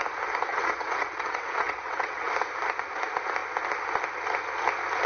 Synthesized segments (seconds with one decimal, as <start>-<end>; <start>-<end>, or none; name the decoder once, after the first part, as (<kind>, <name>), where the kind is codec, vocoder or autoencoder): 0.5-2.3 (vocoder, WaveNeXt)